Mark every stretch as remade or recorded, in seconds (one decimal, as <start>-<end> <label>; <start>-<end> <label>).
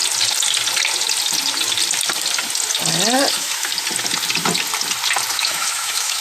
0.0-3.3 recorded; 3.3-3.7 remade; 3.7-5.3 recorded; 5.3-6.2 remade